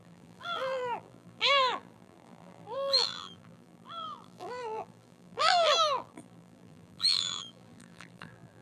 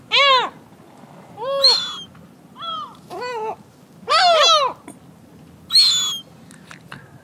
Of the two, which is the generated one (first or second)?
first